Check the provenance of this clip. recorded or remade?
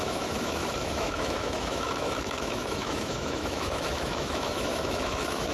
remade